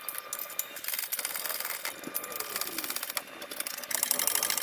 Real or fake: real